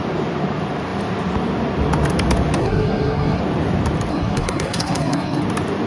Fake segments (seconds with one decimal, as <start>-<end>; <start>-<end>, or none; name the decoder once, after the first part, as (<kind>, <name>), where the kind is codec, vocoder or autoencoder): 2.6-3.4 (codec, SNAC); 4.1-5.4